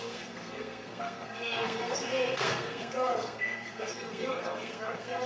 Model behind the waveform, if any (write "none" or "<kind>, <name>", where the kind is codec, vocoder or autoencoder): codec, SNAC